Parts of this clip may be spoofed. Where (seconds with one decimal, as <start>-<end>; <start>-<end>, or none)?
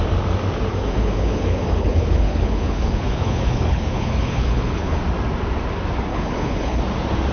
0.7-5.0; 6.1-6.8